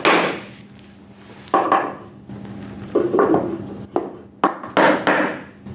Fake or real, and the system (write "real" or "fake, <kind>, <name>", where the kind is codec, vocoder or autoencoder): real